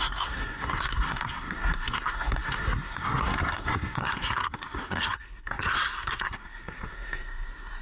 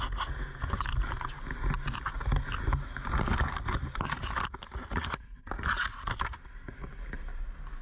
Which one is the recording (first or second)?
second